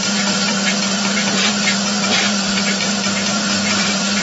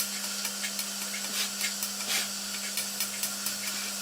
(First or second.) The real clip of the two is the second